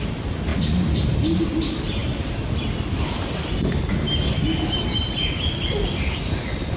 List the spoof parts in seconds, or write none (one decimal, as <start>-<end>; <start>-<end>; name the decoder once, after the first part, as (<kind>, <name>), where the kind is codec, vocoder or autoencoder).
none